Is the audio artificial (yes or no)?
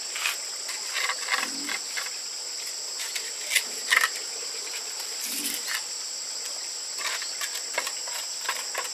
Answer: no